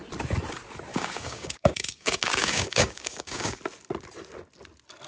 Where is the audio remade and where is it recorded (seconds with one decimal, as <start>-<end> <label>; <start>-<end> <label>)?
0.0-0.9 recorded; 0.9-3.6 remade; 3.6-5.1 recorded